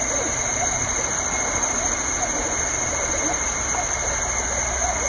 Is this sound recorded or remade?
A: recorded